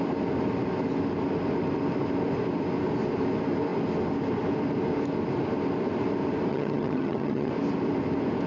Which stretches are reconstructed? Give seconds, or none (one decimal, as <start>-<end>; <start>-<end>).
6.5-7.5